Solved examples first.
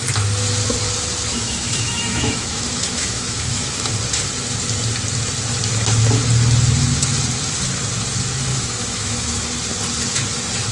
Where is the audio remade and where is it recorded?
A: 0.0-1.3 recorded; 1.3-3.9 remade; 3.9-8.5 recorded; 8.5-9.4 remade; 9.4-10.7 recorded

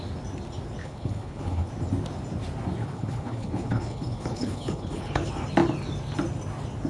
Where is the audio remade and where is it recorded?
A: 0.0-0.8 recorded; 0.8-1.7 remade; 1.7-2.8 recorded; 2.8-5.3 remade; 5.3-6.9 recorded